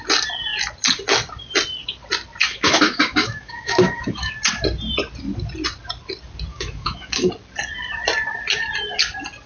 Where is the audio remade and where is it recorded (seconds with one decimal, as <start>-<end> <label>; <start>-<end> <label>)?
0.0-2.4 recorded; 2.4-4.3 remade; 4.3-6.5 recorded; 6.5-7.3 remade; 7.3-9.5 recorded